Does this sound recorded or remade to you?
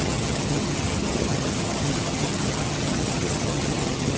remade